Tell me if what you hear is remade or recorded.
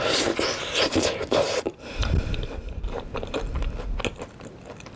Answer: recorded